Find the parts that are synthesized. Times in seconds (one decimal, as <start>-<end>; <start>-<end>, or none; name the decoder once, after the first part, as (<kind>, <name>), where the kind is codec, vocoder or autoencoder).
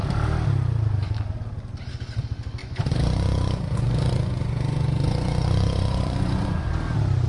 2.6-6.7 (vocoder, Vocos)